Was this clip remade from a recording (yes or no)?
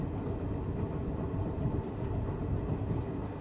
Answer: no